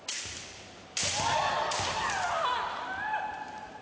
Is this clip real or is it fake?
real